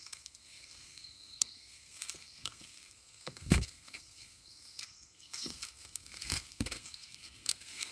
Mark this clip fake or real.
fake